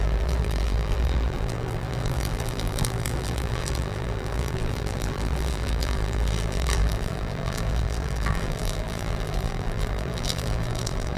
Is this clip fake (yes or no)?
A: yes